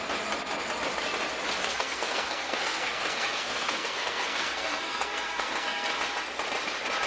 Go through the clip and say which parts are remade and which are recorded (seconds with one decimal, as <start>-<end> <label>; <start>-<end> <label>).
0.0-1.6 recorded; 1.6-5.9 remade; 5.9-7.1 recorded